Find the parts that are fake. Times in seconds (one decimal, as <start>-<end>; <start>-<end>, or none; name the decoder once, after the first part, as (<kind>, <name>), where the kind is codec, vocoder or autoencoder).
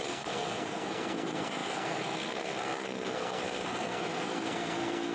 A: 0.0-5.1 (codec, SNAC)